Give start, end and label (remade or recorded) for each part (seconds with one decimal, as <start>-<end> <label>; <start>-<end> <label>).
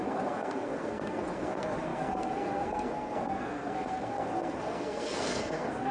0.0-5.9 remade